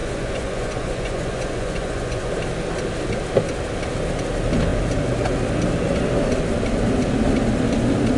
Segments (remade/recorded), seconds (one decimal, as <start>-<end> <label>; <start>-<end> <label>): 0.0-2.3 remade; 2.3-8.2 recorded